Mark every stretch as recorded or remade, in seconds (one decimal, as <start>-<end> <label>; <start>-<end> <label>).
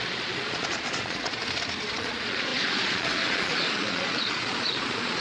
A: 0.0-1.4 remade; 1.4-1.9 recorded; 1.9-5.2 remade